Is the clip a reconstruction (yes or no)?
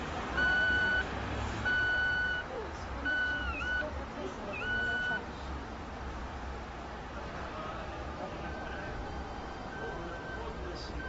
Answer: yes